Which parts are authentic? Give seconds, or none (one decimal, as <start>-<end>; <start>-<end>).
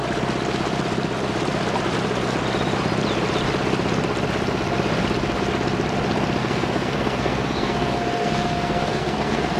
0.0-6.4